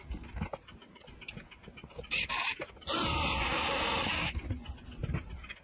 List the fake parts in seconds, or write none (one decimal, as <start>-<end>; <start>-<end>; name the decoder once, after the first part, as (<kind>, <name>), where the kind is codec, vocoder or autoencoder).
none